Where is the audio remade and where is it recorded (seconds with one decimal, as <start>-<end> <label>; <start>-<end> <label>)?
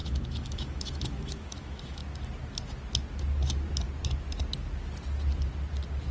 0.0-2.0 remade; 2.0-6.1 recorded